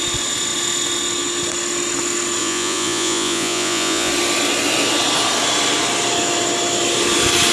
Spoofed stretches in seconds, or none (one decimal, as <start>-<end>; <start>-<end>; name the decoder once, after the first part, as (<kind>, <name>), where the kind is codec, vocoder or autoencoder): 2.4-4.1 (vocoder, Vocos)